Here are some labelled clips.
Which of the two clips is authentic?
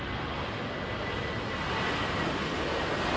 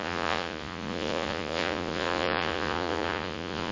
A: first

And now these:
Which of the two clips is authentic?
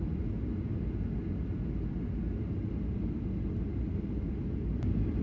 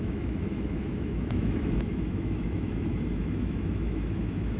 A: first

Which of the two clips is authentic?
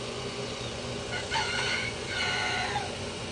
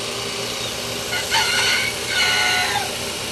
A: second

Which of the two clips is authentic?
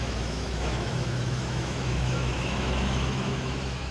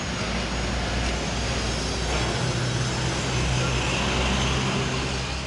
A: second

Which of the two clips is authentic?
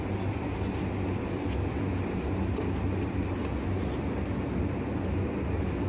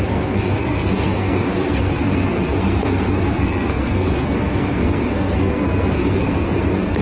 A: first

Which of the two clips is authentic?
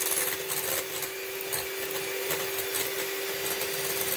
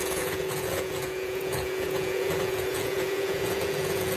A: first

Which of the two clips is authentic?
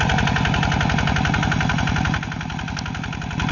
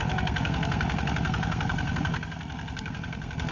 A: first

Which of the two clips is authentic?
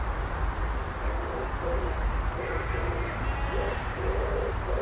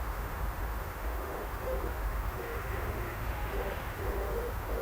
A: first